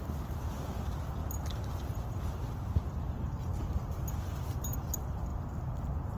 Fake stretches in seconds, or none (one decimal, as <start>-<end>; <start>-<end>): 3.5-4.1